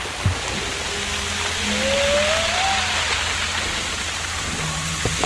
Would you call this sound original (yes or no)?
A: yes